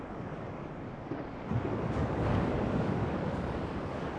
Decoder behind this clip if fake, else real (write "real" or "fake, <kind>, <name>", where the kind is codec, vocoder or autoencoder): fake, codec, DAC